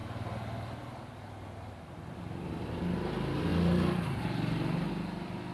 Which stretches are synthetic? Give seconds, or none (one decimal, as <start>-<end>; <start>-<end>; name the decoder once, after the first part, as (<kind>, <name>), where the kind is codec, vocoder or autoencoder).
3.5-4.9 (vocoder, BigVGAN v2)